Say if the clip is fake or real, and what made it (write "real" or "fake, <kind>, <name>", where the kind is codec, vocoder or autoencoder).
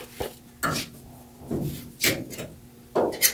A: real